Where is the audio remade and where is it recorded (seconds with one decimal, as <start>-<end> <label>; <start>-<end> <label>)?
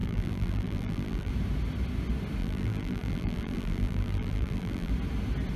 0.0-1.3 remade; 1.3-2.4 recorded; 2.4-4.9 remade; 4.9-5.6 recorded